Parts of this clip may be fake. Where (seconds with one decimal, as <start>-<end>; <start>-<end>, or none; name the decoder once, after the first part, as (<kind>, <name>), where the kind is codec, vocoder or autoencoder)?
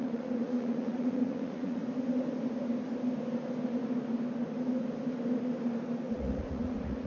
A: 0.0-1.8 (vocoder, Vocos); 6.1-7.1